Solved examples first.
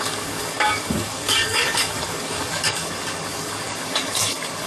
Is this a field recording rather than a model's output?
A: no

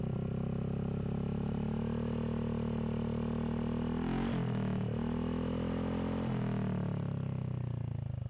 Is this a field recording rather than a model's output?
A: yes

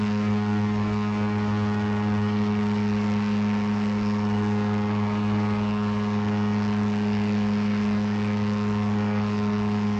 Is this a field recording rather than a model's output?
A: no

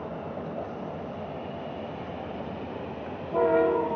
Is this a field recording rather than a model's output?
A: yes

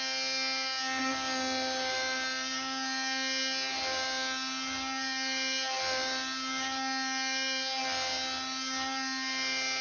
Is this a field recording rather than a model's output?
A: yes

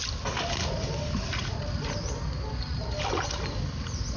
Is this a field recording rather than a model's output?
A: yes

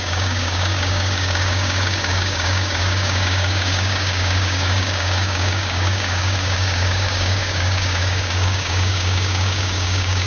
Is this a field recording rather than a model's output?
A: no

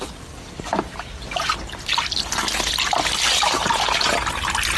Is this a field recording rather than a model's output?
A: yes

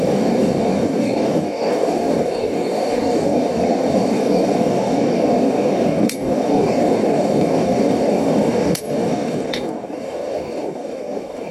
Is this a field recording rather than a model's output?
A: no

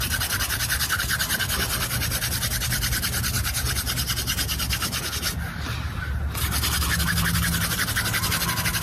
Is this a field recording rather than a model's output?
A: yes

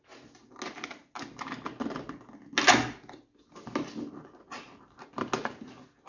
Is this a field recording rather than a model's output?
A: yes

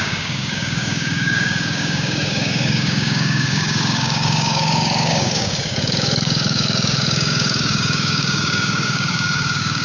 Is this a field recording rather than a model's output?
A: no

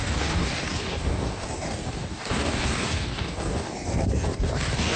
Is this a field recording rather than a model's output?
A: no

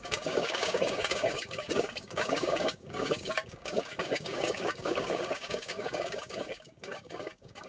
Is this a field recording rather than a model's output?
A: no